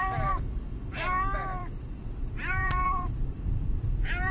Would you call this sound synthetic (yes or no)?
yes